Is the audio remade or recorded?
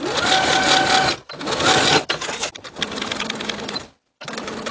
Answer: recorded